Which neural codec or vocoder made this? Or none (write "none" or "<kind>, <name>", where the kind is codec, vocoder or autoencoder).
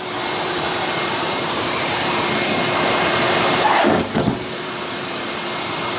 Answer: vocoder, BigVGAN v2